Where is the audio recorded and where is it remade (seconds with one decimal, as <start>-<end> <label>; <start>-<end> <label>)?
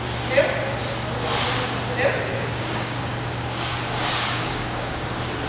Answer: 0.0-2.3 recorded; 2.3-5.1 remade; 5.1-5.5 recorded